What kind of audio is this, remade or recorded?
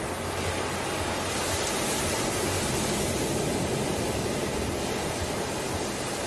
recorded